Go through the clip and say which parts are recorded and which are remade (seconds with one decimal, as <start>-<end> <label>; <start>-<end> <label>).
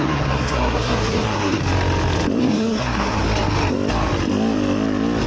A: 0.0-1.6 remade; 1.6-2.4 recorded; 2.4-3.2 remade; 3.2-5.3 recorded